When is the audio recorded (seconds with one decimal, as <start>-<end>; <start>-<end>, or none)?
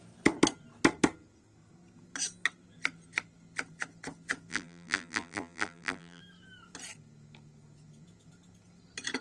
0.0-4.5; 6.2-9.2